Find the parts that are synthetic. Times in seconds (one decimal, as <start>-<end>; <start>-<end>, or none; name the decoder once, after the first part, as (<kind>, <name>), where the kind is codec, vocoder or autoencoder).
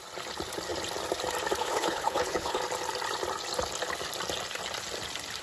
1.6-2.6 (codec, HILCodec)